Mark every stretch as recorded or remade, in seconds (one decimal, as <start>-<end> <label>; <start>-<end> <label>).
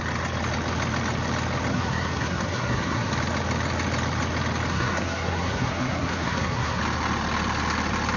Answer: 0.0-1.7 recorded; 1.7-3.1 remade; 3.1-4.7 recorded; 4.7-6.8 remade; 6.8-8.2 recorded